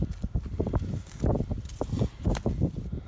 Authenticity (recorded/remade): recorded